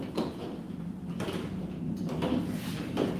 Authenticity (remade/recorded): recorded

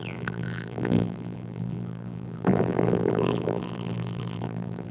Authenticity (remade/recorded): remade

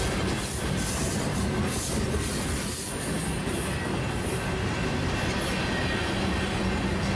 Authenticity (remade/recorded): recorded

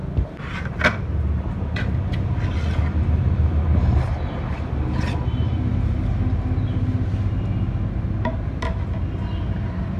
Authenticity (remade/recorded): recorded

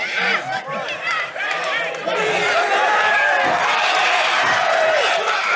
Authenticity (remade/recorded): remade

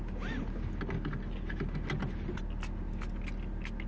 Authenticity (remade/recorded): recorded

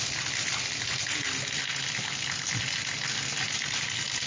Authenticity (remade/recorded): recorded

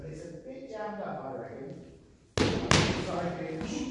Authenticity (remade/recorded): recorded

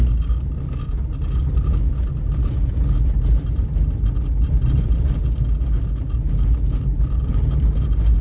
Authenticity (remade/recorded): recorded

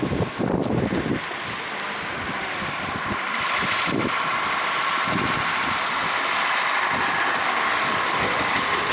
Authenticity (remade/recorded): recorded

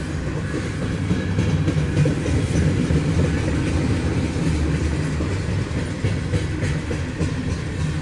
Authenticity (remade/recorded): recorded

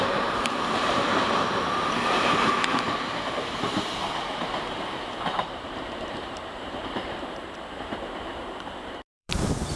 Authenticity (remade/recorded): remade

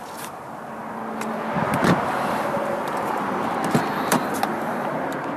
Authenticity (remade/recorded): recorded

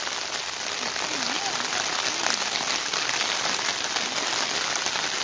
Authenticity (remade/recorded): recorded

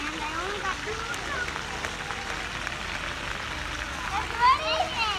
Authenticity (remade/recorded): recorded